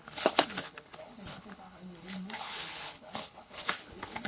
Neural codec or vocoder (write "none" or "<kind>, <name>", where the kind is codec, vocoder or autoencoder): codec, HILCodec